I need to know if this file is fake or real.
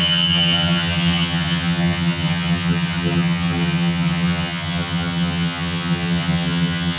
fake